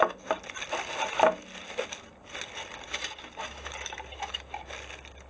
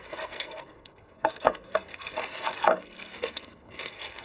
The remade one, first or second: second